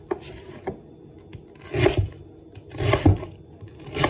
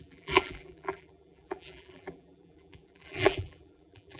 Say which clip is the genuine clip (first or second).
first